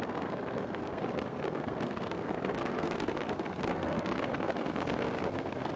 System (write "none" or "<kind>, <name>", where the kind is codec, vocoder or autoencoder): codec, SNAC